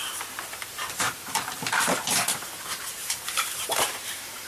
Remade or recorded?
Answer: remade